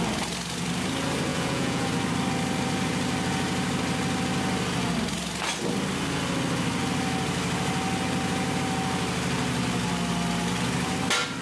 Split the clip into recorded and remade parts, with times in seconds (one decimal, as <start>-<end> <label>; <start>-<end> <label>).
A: 0.0-1.3 recorded; 1.3-1.9 remade; 1.9-11.4 recorded